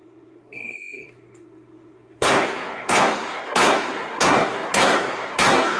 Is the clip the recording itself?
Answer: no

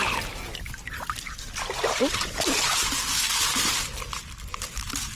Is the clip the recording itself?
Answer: no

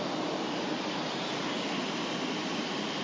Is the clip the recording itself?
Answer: no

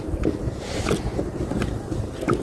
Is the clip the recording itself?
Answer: yes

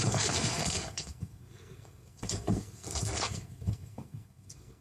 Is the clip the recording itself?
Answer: no